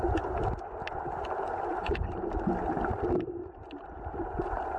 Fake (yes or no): no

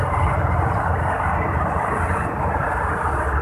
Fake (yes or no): no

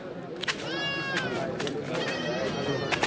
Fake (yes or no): no